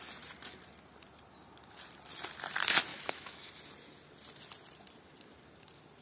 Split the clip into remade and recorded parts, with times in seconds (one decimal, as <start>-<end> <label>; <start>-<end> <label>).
0.0-2.9 recorded; 2.9-3.5 remade; 3.5-6.0 recorded